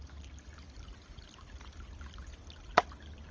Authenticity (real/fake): real